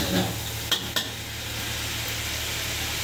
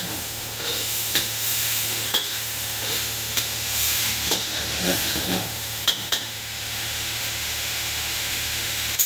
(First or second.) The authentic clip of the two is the first